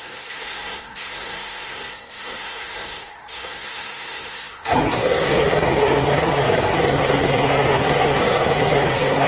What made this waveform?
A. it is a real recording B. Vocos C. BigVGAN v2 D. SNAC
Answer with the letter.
D